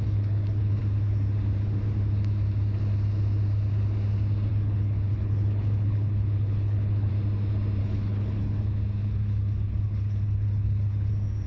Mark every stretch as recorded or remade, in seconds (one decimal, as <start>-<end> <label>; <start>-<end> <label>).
0.0-0.8 remade; 0.8-4.5 recorded; 4.5-7.1 remade; 7.1-7.8 recorded; 7.8-8.6 remade; 8.6-9.0 recorded; 9.0-11.1 remade; 11.1-11.5 recorded